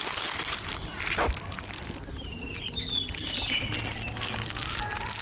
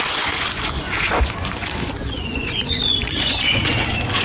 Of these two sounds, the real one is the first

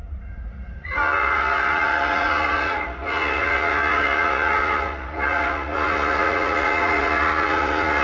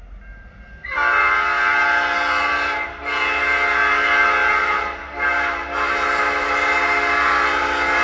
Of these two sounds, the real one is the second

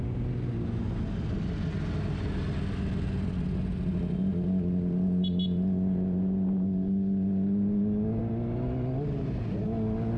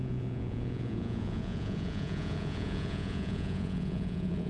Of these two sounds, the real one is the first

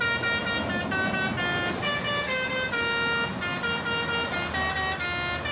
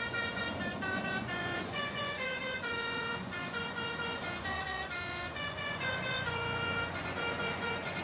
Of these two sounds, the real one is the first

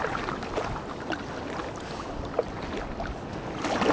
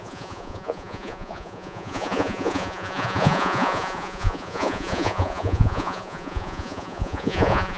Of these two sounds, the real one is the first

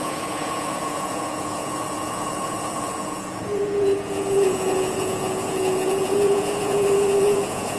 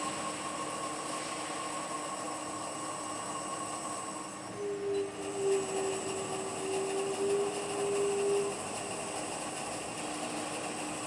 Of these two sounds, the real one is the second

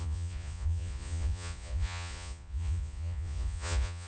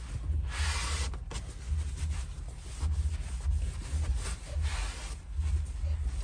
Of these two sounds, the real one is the second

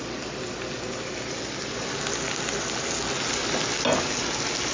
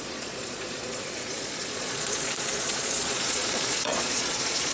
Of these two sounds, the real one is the first